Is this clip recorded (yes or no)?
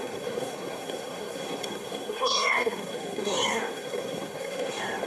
no